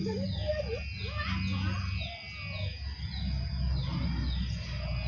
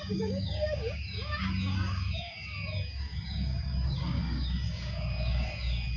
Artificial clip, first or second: second